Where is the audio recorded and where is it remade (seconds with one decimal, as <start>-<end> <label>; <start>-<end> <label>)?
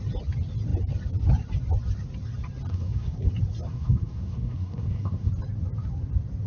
0.0-2.7 recorded; 2.7-3.3 remade; 3.3-3.7 recorded; 3.7-5.3 remade; 5.3-6.5 recorded